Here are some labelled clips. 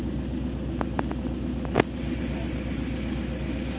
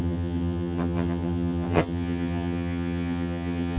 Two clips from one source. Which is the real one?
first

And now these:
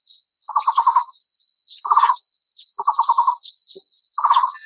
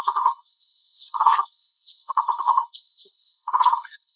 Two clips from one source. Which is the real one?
first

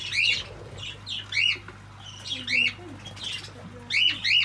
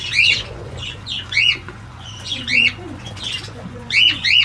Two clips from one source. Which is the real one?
first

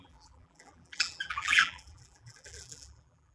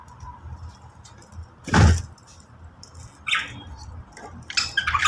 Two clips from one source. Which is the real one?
second